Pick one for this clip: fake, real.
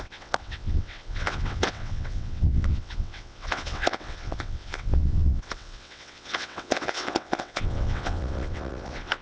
fake